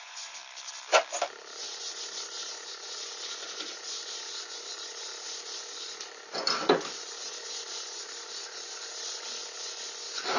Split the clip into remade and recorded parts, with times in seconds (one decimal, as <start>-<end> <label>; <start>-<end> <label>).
0.0-0.4 remade; 0.4-1.6 recorded; 1.6-10.4 remade